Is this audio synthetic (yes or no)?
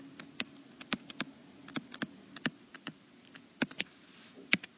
no